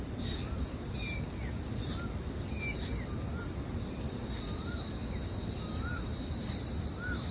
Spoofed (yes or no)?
no